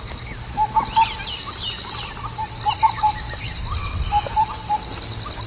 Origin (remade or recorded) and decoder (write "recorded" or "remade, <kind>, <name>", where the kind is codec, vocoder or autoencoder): recorded